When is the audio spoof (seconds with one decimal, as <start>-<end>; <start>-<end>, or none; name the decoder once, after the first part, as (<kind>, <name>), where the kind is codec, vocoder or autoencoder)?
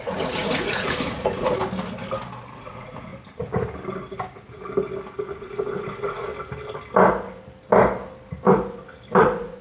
0.0-1.6 (vocoder, Vocos); 2.6-3.1; 5.3-6.3; 9.2-9.6